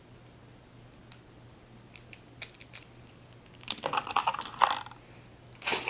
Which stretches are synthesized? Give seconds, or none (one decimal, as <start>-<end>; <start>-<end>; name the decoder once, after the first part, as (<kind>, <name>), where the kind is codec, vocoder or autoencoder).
none